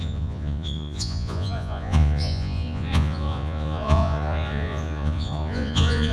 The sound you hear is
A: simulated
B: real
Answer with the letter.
A